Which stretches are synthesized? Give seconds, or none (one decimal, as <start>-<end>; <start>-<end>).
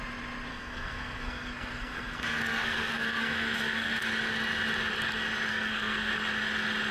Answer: 0.5-4.1; 5.5-6.1